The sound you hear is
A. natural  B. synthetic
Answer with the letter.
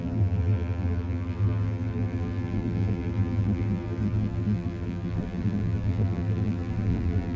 B